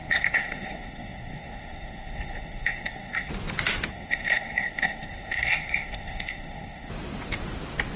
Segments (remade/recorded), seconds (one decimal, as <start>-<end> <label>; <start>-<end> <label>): 0.0-3.3 remade; 3.3-3.9 recorded; 3.9-6.9 remade; 6.9-8.0 recorded